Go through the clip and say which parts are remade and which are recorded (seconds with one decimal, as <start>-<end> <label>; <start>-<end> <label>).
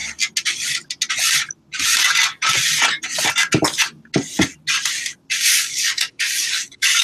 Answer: 0.0-5.5 recorded; 5.5-7.0 remade